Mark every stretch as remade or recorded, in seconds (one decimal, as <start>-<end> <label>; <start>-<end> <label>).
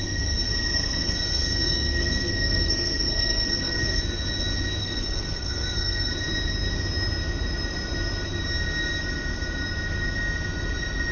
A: 0.0-0.5 recorded; 0.5-4.0 remade; 4.0-4.8 recorded; 4.8-6.1 remade; 6.1-11.1 recorded